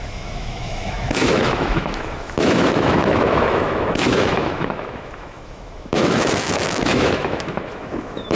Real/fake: fake